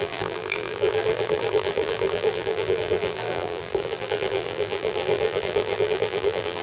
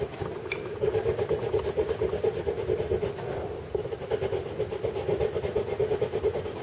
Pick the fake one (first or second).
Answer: first